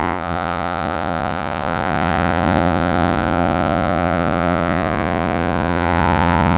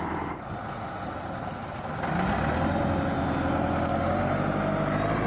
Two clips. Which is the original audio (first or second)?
second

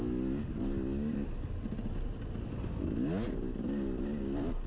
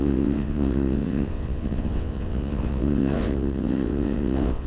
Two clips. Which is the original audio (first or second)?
first